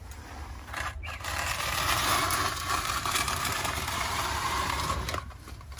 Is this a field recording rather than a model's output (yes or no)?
no